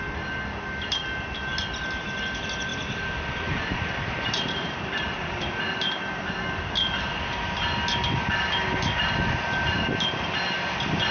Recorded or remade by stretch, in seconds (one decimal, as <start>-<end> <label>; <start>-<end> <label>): 0.0-2.7 recorded; 2.7-5.6 remade; 5.6-11.1 recorded